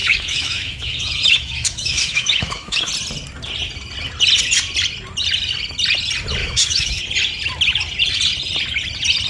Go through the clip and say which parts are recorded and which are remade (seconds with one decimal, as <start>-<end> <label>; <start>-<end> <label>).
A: 0.0-2.9 remade; 2.9-6.4 recorded; 6.4-7.0 remade; 7.0-9.3 recorded